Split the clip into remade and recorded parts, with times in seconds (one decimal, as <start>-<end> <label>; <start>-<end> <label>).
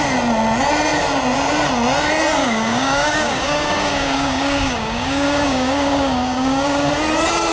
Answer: 0.0-2.4 recorded; 2.4-6.9 remade; 6.9-7.5 recorded